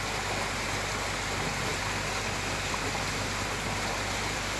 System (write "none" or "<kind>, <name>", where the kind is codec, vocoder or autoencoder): none